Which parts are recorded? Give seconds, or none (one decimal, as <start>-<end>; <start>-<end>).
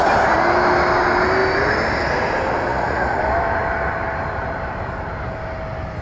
0.0-2.7; 3.2-6.0